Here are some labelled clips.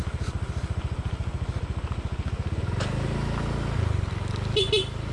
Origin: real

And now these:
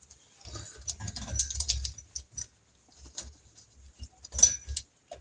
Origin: real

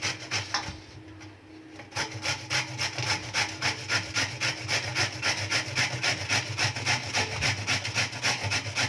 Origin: real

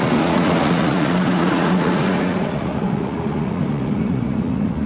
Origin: fake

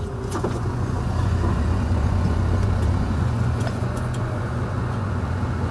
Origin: fake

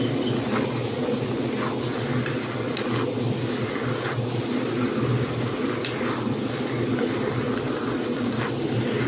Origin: real